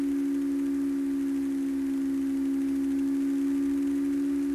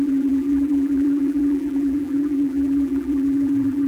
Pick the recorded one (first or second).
first